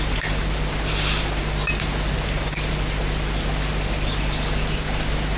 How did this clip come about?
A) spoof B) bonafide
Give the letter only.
B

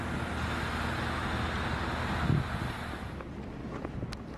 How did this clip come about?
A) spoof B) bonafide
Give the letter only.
B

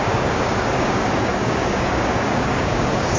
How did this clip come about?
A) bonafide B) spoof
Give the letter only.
B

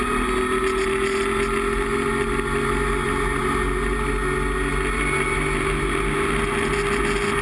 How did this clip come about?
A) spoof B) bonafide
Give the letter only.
B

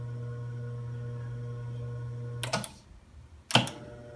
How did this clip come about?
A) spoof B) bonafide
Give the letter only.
B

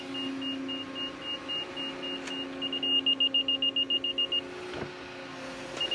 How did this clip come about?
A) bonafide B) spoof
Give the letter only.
A